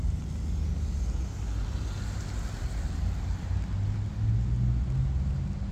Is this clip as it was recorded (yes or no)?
yes